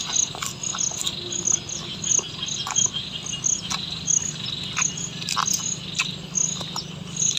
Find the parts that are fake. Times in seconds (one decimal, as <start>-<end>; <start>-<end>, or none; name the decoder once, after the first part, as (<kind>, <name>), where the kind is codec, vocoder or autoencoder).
none